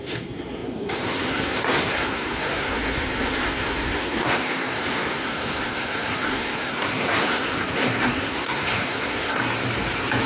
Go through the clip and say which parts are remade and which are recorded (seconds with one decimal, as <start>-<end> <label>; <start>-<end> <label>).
0.0-9.4 remade; 9.4-10.3 recorded